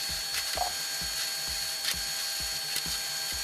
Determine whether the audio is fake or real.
real